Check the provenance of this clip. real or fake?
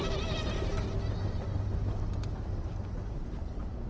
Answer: real